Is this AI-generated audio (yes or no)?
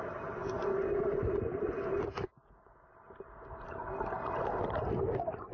no